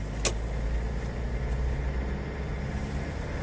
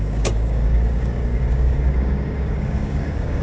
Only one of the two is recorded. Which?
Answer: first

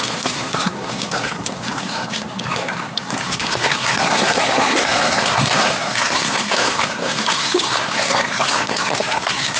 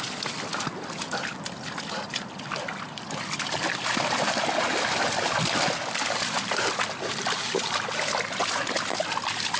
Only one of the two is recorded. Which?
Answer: second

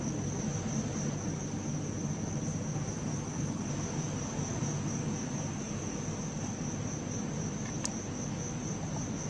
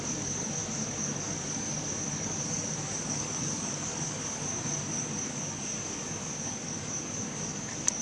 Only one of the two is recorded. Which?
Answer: first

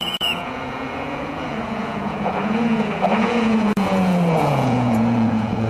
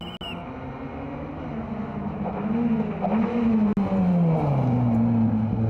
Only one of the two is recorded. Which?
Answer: second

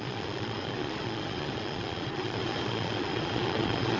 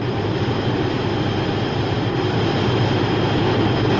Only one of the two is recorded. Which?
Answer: second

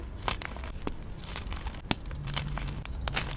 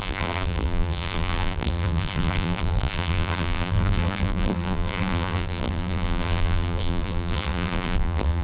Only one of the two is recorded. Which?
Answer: first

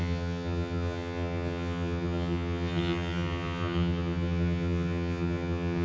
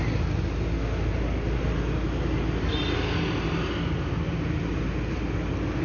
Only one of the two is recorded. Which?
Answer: second